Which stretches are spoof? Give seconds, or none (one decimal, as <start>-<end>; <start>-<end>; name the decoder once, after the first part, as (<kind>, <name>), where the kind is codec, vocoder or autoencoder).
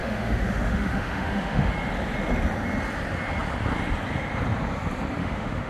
0.0-1.7 (autoencoder, DAC-VAE); 5.2-5.7